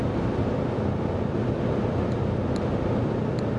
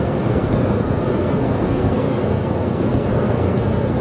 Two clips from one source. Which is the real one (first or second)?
first